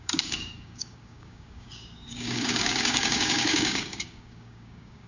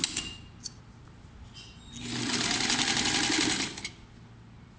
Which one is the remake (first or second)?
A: first